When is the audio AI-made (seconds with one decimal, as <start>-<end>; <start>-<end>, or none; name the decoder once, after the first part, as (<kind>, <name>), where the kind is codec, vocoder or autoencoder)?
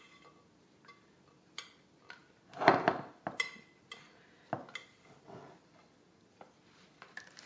none